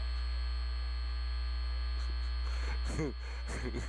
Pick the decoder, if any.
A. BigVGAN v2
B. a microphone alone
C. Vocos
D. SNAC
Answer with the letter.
B